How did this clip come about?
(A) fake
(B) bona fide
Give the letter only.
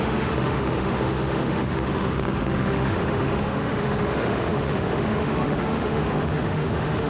A